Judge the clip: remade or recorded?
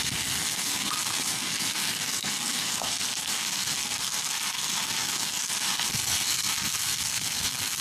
remade